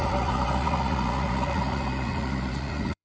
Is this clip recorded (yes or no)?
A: no